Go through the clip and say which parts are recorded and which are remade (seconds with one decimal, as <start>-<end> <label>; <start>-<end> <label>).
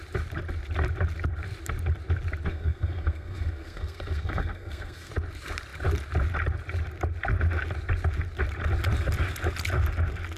0.0-2.5 recorded; 2.5-5.1 remade; 5.1-10.4 recorded